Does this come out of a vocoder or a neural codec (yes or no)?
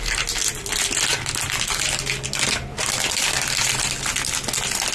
no